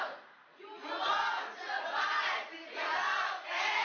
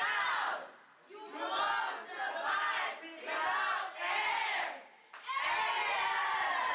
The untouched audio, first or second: second